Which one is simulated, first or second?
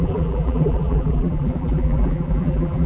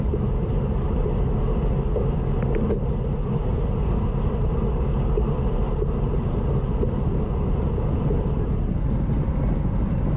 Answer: first